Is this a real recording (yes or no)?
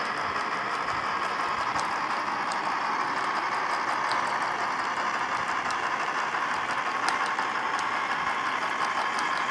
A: yes